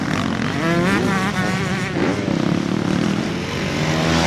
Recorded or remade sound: recorded